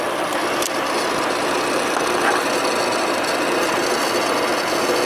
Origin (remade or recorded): recorded